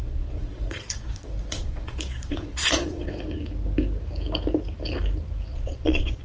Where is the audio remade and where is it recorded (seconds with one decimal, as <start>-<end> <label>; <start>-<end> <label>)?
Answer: 0.0-3.1 remade; 3.1-5.5 recorded; 5.5-6.2 remade